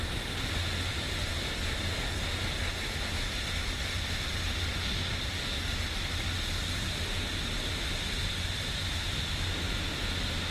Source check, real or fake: real